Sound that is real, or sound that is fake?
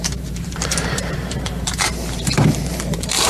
fake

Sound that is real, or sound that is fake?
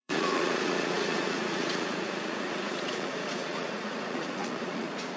fake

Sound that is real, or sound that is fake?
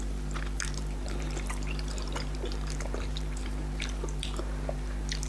fake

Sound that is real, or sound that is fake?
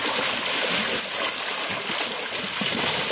real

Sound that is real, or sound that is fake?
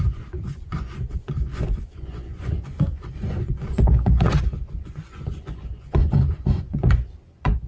fake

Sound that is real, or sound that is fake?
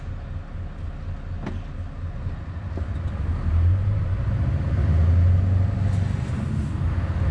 real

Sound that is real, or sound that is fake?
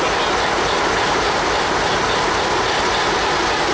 real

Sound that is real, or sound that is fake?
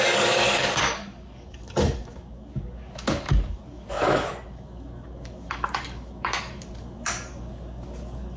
fake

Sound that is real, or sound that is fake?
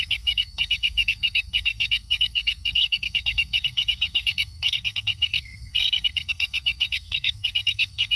fake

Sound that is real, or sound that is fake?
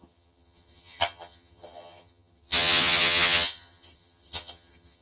fake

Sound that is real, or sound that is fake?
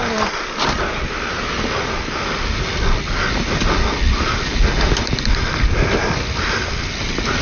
real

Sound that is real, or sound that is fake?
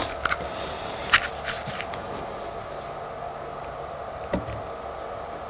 real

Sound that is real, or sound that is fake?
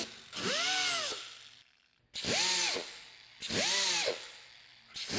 real